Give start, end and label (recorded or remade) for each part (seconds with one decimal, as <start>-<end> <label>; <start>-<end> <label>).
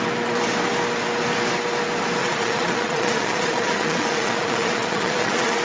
0.0-2.2 recorded; 2.2-5.6 remade